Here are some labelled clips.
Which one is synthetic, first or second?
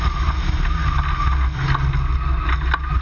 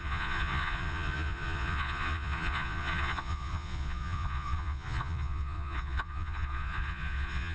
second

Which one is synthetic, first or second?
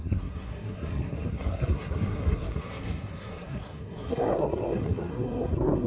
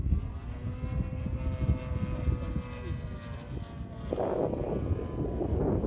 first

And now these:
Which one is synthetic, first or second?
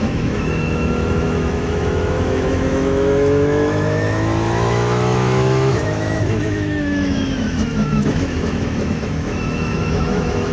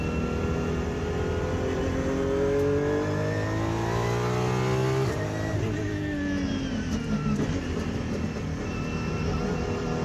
first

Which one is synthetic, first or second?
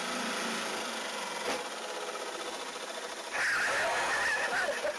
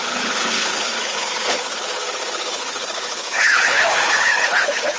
second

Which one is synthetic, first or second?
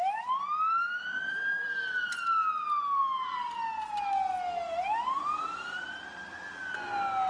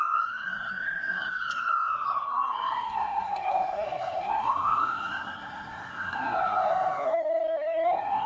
second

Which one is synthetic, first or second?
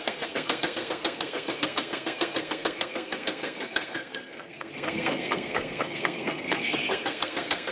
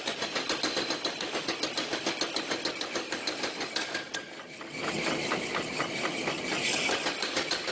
first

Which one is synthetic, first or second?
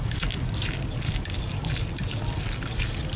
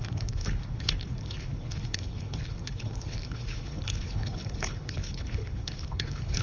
second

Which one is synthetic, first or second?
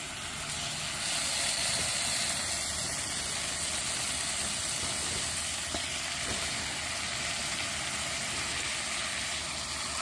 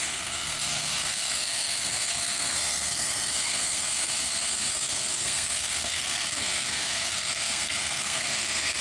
second